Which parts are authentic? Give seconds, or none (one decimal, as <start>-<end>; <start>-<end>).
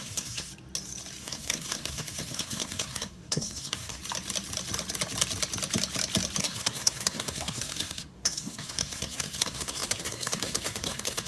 0.5-1.2; 4.0-6.4